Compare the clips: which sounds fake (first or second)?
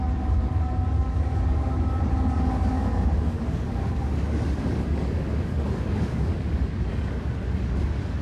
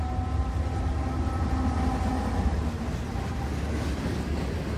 first